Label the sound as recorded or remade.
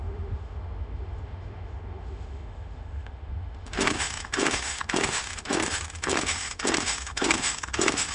remade